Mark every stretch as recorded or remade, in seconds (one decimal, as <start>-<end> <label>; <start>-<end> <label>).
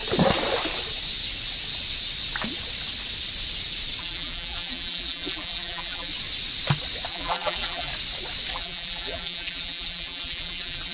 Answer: 0.0-4.0 recorded; 4.0-6.1 remade; 6.1-7.1 recorded; 7.1-7.9 remade; 7.9-8.5 recorded; 8.5-10.9 remade